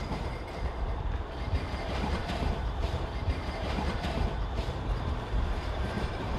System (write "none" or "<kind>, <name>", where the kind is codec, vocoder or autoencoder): vocoder, BigVGAN v2